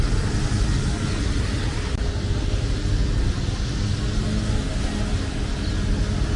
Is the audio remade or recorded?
recorded